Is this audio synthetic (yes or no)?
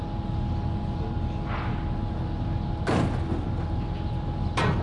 no